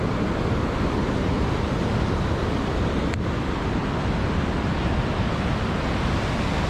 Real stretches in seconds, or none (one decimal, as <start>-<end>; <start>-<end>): 0.0-1.0; 1.6-2.4; 3.1-6.7